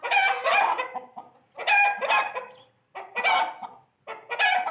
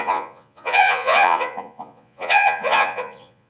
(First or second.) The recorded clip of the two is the first